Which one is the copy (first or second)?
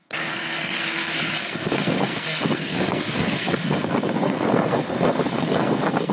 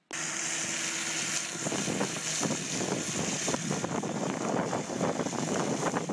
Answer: first